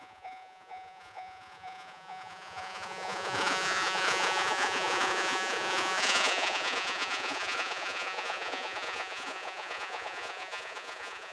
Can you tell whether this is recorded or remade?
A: remade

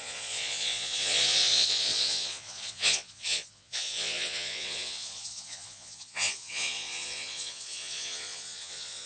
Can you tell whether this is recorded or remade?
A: remade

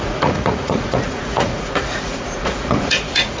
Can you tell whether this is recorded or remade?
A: remade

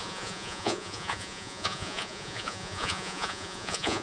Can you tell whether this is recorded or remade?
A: remade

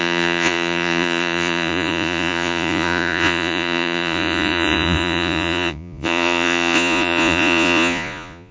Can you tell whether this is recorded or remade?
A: remade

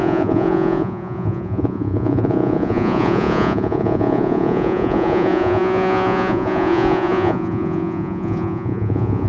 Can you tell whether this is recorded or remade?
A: remade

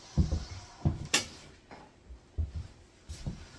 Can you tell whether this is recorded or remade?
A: recorded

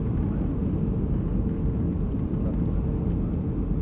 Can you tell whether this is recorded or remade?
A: recorded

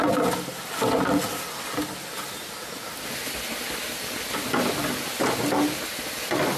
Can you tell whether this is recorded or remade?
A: recorded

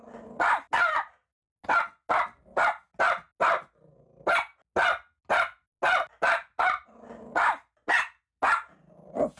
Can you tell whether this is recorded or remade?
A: recorded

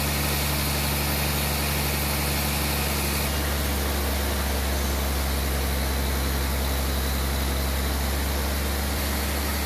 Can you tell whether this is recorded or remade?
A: recorded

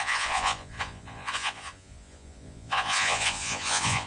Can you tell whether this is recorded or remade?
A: remade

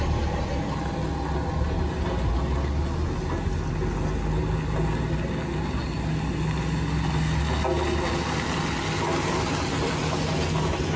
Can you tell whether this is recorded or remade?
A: recorded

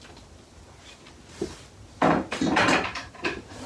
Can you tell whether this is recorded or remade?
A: recorded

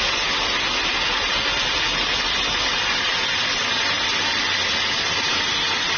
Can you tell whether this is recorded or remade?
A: recorded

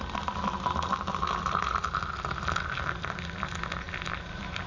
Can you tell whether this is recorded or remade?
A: recorded